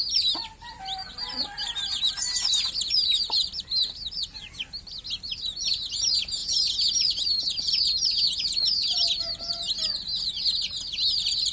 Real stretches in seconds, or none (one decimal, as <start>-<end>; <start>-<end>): 0.0-11.5